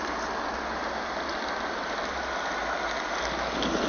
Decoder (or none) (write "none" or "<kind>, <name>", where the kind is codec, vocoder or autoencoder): none